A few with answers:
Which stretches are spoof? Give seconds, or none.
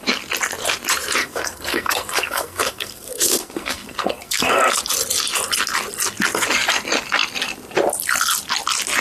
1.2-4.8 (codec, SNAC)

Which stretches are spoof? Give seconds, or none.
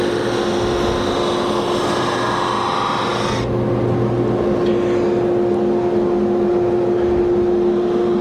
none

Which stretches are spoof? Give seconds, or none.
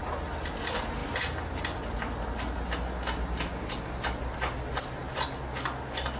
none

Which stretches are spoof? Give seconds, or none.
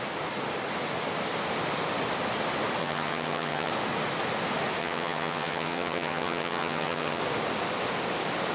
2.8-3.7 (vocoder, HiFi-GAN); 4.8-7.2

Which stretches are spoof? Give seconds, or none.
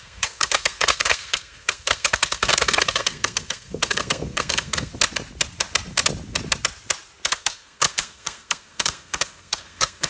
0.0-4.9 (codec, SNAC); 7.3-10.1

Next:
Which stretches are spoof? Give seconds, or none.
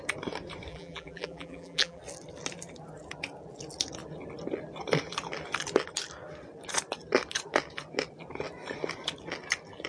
0.7-2.0 (vocoder, BigVGAN v2)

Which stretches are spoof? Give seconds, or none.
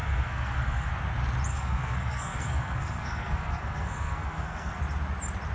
0.0-0.9 (codec, SNAC); 1.5-4.8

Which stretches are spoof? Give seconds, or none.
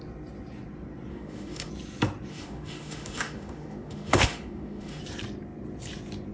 1.1-1.7 (autoencoder, DAC-VAE); 2.3-5.0